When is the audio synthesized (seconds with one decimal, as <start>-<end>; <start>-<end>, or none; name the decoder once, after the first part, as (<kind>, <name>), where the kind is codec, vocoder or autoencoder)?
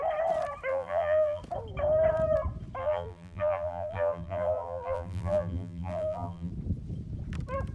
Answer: 0.7-1.4 (vocoder, BigVGAN v2); 2.8-6.5